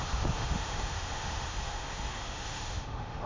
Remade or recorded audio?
remade